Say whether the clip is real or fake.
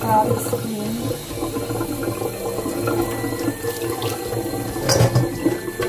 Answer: real